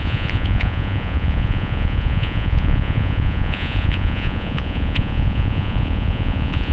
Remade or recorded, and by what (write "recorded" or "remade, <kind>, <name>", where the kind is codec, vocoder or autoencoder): remade, vocoder, Vocos